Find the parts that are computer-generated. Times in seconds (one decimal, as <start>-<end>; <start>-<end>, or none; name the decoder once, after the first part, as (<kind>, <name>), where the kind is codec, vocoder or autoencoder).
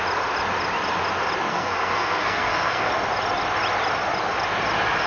1.5-2.9 (codec, SNAC)